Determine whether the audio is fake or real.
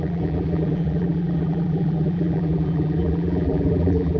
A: fake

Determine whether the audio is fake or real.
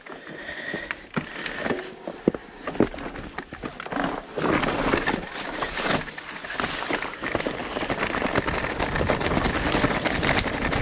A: real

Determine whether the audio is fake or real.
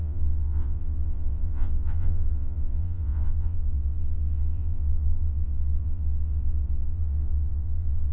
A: fake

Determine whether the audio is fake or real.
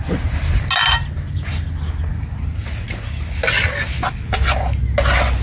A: real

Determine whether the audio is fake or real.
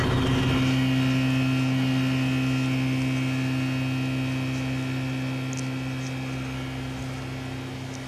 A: real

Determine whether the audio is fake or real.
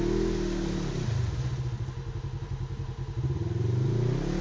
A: real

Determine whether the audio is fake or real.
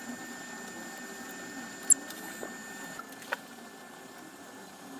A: real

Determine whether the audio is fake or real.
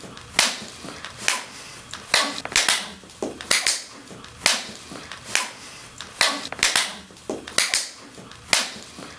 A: real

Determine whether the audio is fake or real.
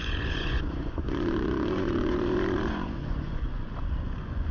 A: fake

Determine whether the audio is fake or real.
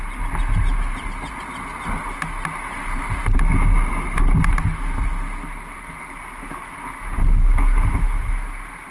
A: real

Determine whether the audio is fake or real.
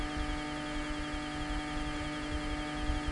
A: real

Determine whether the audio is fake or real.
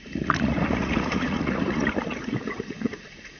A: fake